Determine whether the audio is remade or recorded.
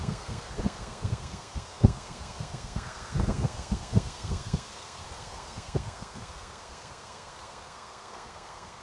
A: remade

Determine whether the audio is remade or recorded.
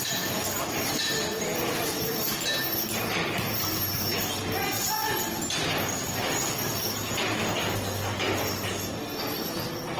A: recorded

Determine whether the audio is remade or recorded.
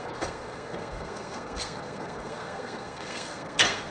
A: remade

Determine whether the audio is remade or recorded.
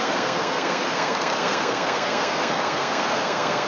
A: remade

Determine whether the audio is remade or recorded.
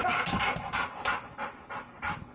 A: recorded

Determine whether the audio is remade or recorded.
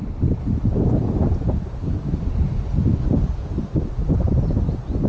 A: recorded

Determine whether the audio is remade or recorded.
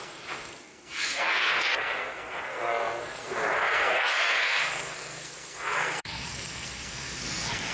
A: remade